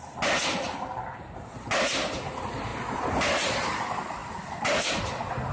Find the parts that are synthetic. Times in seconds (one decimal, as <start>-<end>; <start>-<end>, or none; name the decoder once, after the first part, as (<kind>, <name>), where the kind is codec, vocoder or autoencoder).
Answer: none